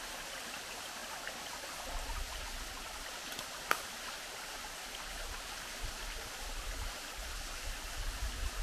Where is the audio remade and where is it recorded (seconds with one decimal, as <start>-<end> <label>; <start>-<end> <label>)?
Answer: 0.0-8.6 recorded